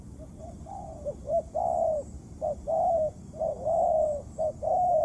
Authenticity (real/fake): fake